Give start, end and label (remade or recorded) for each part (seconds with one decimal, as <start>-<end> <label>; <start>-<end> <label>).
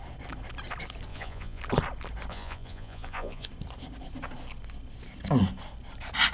0.0-1.1 recorded; 1.1-1.6 remade; 1.6-2.3 recorded; 2.3-3.5 remade; 3.5-6.3 recorded